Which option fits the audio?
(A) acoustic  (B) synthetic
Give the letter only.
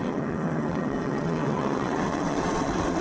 B